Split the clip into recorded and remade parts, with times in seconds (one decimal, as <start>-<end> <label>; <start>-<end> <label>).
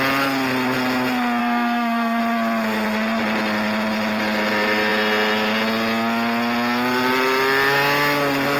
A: 0.0-1.4 recorded; 1.4-2.2 remade; 2.2-8.6 recorded